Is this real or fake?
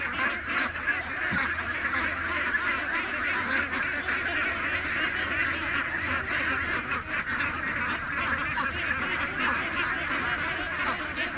real